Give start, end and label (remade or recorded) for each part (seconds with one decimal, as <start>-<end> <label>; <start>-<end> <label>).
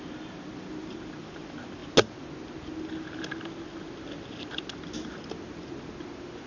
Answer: 0.0-6.5 recorded